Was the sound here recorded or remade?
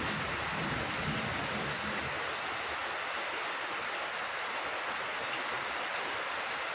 recorded